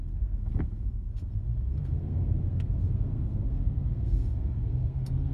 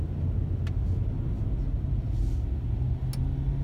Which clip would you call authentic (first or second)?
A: second